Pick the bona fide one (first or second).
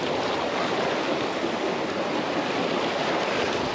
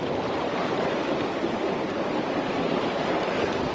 first